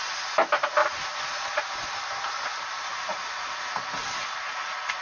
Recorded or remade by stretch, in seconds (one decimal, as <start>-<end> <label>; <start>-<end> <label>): 0.0-0.8 recorded; 0.8-3.6 remade; 3.6-5.0 recorded